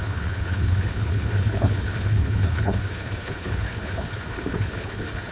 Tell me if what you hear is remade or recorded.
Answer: remade